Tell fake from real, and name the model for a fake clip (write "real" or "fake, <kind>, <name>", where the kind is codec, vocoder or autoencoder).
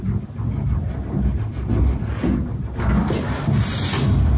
real